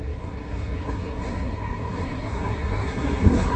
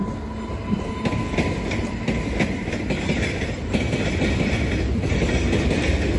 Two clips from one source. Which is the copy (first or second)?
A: first